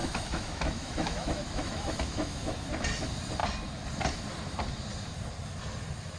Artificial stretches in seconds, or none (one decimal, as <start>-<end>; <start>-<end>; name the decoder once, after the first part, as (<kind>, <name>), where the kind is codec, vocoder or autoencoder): 0.0-2.7 (autoencoder, DAC-VAE)